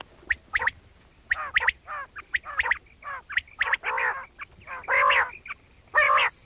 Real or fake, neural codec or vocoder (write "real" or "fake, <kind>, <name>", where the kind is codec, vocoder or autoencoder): real